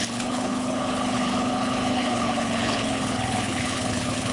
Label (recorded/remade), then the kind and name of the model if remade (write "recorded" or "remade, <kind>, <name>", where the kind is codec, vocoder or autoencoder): remade, codec, HILCodec